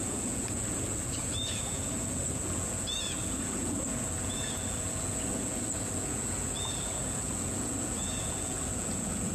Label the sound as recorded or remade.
remade